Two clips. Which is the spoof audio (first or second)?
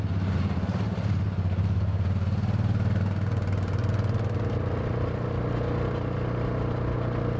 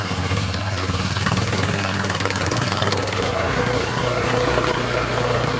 second